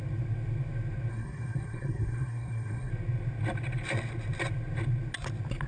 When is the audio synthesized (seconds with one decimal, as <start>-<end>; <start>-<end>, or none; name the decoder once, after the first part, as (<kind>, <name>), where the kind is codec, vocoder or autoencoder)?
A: 1.1-2.9 (codec, SNAC)